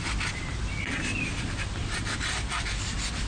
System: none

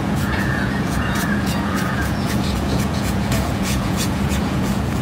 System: vocoder, Vocos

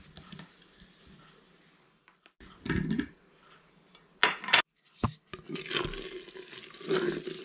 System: none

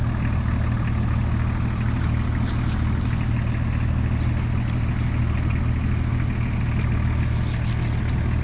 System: none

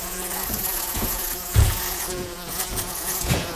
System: vocoder, Vocos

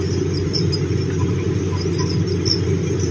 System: none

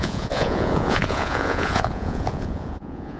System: vocoder, Vocos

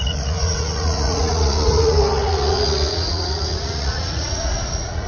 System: vocoder, Vocos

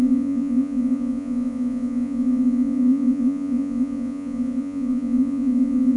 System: vocoder, Vocos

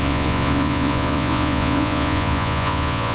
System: vocoder, Vocos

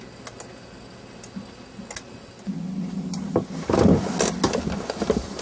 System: none